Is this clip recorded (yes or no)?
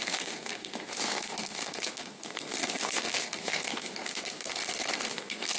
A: no